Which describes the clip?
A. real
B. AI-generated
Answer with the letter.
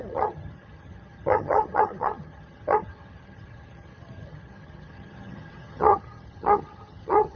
B